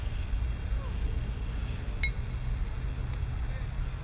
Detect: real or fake real